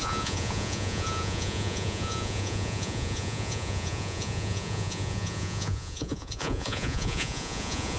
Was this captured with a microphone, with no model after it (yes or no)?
no